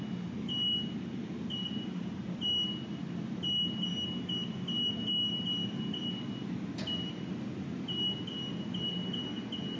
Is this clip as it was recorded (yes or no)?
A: yes